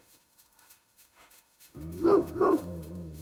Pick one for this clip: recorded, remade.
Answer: remade